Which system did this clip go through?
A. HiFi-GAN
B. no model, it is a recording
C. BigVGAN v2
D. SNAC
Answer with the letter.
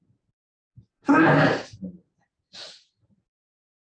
C